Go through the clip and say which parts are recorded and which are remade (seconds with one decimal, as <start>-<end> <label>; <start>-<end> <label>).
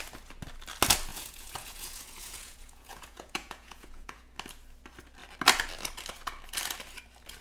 0.0-1.1 recorded; 1.1-4.3 remade; 4.3-7.4 recorded